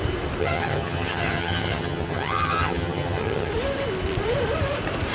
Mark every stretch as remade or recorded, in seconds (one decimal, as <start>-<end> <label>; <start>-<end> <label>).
0.0-0.4 recorded; 0.4-3.5 remade; 3.5-5.1 recorded